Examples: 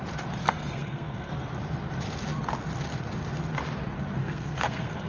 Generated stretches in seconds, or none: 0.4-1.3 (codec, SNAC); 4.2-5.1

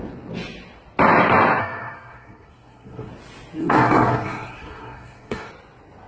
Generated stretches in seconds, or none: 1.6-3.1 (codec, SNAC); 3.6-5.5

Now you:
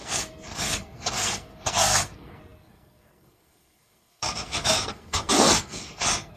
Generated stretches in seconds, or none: 0.0-6.4 (codec, SNAC)

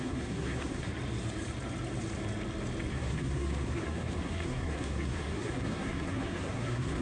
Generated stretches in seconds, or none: 0.0-0.9 (codec, SNAC); 2.9-7.0

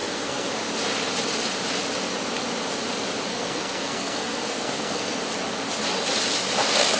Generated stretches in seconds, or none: 0.0-0.5 (codec, SNAC); 3.3-5.2

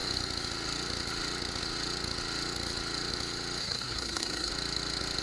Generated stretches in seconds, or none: 3.6-4.5 (codec, SNAC)

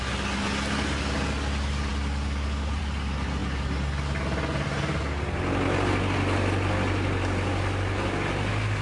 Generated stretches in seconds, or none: none

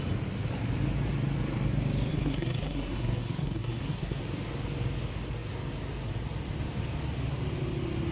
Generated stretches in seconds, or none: 2.1-4.2 (codec, SNAC)